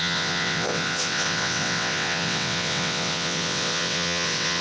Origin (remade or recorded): remade